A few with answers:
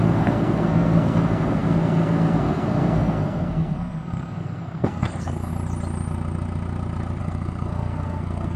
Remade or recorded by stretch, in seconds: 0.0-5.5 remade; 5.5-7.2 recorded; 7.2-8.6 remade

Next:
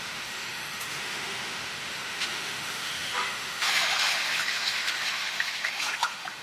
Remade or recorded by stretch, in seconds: 0.0-6.4 remade

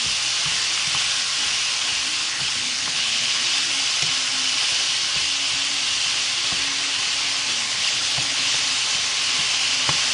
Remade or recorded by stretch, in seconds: 0.0-2.2 recorded; 2.2-3.4 remade; 3.4-7.6 recorded; 7.6-8.6 remade; 8.6-10.1 recorded

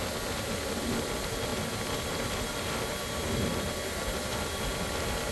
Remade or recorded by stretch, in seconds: 0.0-5.3 recorded